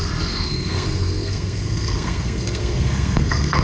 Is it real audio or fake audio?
fake